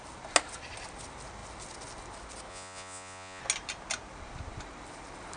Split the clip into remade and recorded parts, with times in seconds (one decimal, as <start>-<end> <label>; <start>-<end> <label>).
0.0-2.5 recorded; 2.5-3.4 remade; 3.4-5.4 recorded